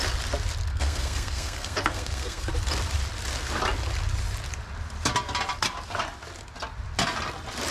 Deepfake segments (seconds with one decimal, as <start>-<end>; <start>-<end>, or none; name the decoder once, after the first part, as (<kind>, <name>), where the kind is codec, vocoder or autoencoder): 0.7-2.5 (codec, SNAC)